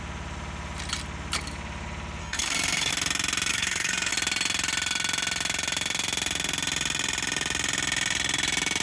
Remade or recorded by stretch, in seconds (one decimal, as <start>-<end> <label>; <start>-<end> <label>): 0.0-2.2 recorded; 2.2-2.9 remade; 2.9-3.5 recorded; 3.5-4.1 remade; 4.1-8.8 recorded